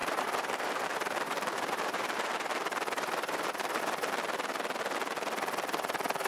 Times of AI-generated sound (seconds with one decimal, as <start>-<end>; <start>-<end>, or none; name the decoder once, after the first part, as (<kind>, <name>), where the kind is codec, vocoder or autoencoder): 0.0-3.8 (vocoder, BigVGAN v2)